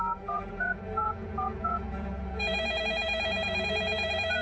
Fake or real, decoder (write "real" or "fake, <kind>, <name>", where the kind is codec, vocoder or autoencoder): fake, vocoder, Vocos